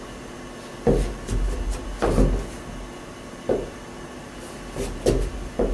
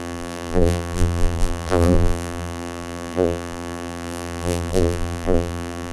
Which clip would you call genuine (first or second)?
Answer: first